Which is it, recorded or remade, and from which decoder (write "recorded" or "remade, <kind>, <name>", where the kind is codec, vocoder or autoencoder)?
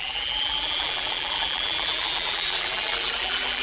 remade, vocoder, BigVGAN v2